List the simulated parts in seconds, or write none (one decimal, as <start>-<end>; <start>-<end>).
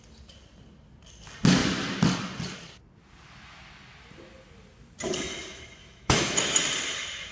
5.8-6.6